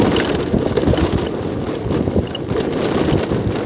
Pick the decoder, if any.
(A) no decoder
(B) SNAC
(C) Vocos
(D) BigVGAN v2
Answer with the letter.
A